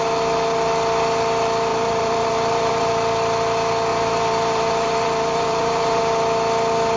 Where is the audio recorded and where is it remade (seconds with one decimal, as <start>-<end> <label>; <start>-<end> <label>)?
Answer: 0.0-1.7 recorded; 1.7-2.9 remade; 2.9-3.9 recorded; 3.9-6.0 remade; 6.0-7.0 recorded